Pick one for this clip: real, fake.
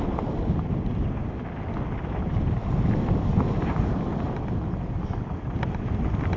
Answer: real